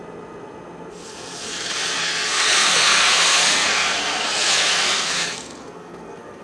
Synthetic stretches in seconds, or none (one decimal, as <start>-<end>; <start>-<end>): 0.9-6.4